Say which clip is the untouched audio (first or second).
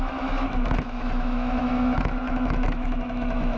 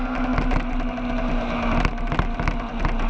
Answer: second